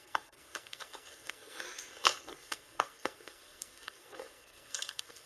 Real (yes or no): no